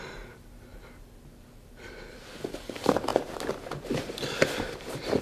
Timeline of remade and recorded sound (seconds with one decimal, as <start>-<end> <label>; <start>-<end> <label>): 0.0-3.1 remade; 3.1-3.7 recorded; 3.7-5.2 remade

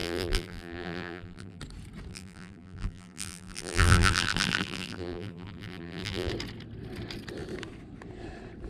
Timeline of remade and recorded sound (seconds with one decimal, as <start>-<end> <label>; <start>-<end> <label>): 0.0-1.6 remade; 1.6-2.1 recorded; 2.1-6.3 remade; 6.3-8.7 recorded

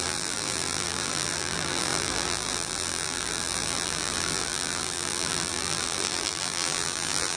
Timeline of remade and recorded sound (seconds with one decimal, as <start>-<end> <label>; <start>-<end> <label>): 0.0-7.4 remade

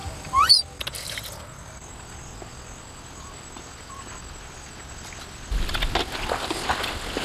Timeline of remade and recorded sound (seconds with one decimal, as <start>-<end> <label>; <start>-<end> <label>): 0.0-0.5 remade; 0.5-7.2 recorded